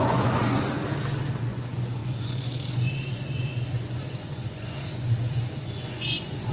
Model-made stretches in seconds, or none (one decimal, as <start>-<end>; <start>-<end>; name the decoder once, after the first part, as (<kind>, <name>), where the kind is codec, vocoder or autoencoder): 0.0-0.8 (vocoder, Vocos); 1.3-6.5